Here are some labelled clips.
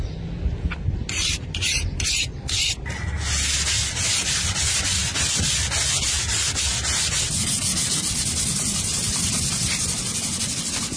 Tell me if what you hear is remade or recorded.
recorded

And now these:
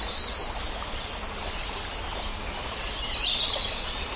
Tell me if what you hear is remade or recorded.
recorded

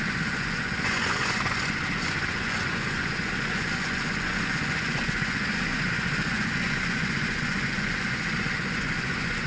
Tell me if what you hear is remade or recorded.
remade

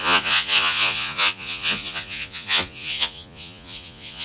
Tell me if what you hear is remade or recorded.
remade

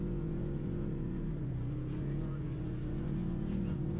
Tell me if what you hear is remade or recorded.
remade